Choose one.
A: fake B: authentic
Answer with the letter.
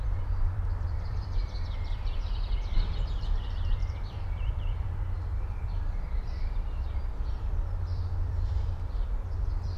A